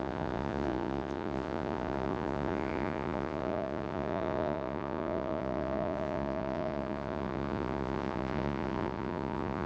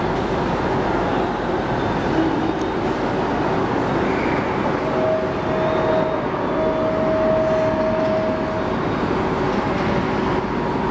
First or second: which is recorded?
second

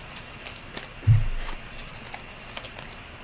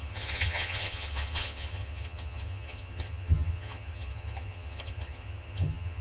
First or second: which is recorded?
first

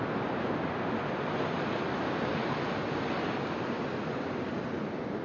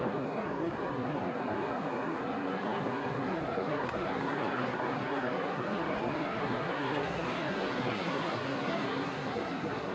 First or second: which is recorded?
first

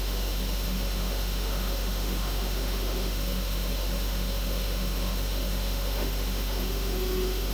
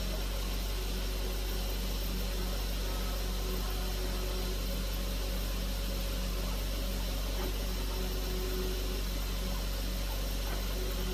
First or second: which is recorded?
second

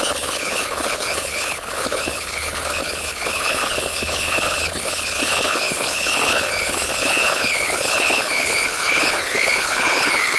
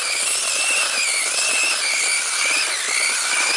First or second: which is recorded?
second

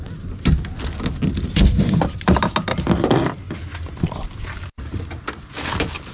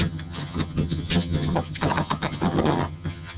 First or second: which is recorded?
first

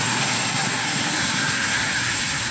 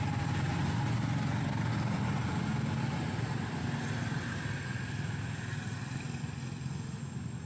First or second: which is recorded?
second